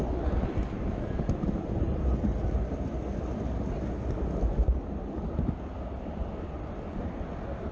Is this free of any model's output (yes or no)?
yes